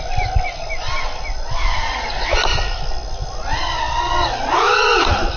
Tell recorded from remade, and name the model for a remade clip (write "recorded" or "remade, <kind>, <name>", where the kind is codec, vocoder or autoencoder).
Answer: recorded